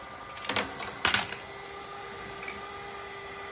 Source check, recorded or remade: recorded